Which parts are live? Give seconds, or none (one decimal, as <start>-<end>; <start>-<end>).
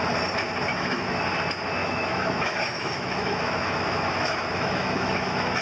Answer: 0.0-0.7; 1.2-1.8